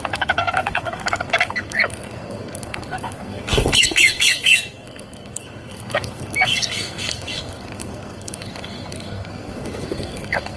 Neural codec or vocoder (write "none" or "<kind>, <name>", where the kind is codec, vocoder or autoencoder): codec, SNAC